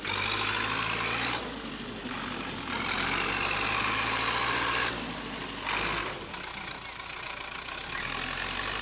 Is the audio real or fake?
real